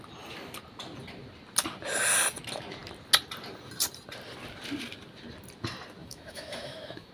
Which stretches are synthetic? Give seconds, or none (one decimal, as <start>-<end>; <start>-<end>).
6.0-7.1